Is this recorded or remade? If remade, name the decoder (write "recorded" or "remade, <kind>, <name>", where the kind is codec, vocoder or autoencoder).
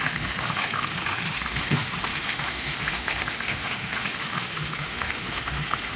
remade, autoencoder, DAC-VAE